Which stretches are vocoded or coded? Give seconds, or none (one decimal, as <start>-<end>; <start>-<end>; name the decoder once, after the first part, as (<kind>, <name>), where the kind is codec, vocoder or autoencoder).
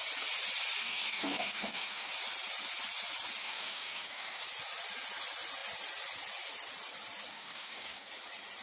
0.8-2.1 (codec, DAC); 3.4-4.4; 7.3-8.1